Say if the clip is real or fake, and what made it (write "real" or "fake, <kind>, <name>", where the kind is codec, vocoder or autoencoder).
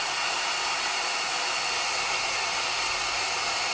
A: real